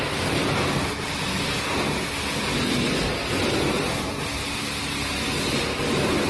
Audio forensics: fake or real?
real